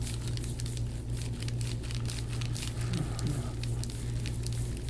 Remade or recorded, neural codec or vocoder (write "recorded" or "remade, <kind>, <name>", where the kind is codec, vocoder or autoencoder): recorded